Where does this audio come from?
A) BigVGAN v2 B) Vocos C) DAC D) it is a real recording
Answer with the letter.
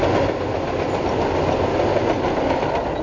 D